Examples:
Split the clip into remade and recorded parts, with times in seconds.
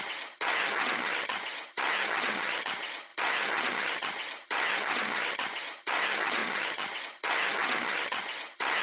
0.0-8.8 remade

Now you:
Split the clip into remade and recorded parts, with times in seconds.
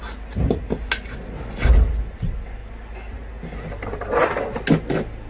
0.0-5.3 recorded